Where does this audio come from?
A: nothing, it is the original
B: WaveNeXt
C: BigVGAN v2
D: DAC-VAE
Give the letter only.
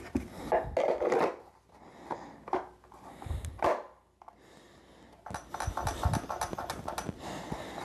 A